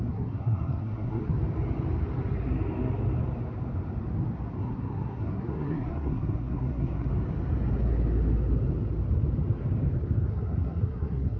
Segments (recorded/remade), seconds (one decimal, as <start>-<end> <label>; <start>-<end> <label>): 0.0-1.2 remade; 1.2-4.6 recorded; 4.6-7.1 remade; 7.1-10.3 recorded; 10.3-11.4 remade